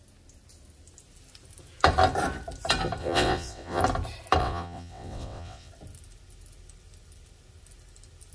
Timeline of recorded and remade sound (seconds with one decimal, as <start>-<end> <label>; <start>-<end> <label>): 0.0-3.0 recorded; 3.0-3.8 remade; 3.8-4.4 recorded; 4.4-5.7 remade; 5.7-8.3 recorded